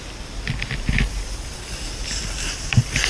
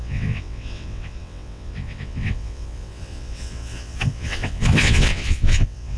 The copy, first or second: second